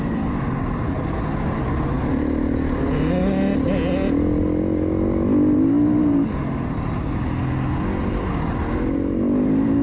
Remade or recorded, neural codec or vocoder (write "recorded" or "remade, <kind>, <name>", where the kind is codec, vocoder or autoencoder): recorded